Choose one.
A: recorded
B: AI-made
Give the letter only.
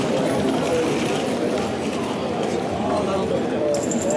A